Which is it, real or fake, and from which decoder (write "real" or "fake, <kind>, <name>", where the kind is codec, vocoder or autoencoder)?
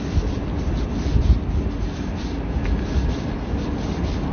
real